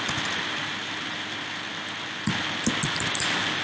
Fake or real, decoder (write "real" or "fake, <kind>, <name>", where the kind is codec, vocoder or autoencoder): real